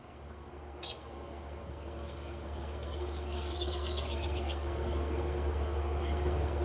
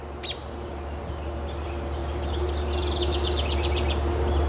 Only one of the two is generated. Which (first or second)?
first